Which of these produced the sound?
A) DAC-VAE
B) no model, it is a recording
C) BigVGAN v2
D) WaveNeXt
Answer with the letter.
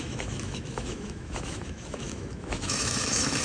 A